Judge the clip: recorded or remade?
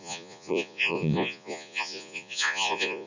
remade